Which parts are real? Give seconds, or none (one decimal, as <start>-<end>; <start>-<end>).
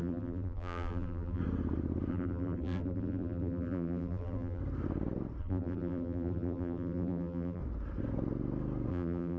1.4-2.1; 4.6-5.4; 7.6-8.9